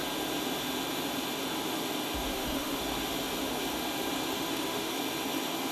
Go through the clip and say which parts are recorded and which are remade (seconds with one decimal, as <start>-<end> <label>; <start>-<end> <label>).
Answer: 0.0-2.3 recorded; 2.3-2.8 remade; 2.8-4.3 recorded; 4.3-4.9 remade; 4.9-5.7 recorded